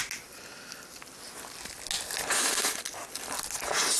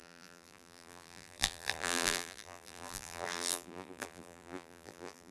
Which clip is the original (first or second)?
first